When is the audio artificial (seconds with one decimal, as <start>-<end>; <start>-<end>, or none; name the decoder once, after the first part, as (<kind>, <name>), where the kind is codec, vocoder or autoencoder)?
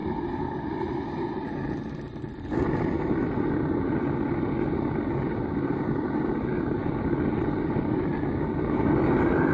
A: none